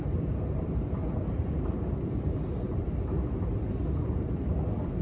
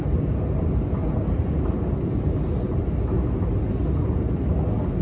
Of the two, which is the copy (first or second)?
first